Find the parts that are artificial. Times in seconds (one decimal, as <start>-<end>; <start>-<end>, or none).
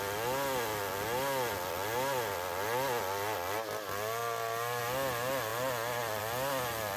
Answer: none